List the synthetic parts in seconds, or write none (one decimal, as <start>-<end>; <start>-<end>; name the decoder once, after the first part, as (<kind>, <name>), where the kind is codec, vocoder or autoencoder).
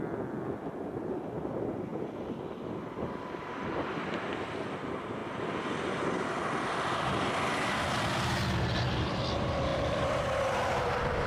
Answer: 9.7-10.3 (vocoder, BigVGAN v2)